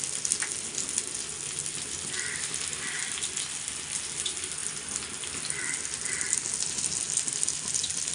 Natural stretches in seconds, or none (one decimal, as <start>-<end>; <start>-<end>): 0.0-8.1